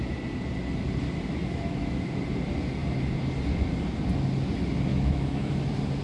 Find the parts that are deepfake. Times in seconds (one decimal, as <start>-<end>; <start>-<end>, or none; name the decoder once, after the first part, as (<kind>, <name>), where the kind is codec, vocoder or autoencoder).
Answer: 1.4-2.0 (autoencoder, DAC-VAE); 4.9-5.5